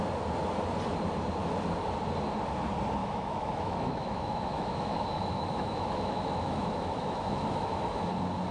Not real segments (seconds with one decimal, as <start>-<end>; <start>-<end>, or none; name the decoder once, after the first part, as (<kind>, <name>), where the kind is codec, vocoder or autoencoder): 3.0-8.0 (autoencoder, DAC-VAE)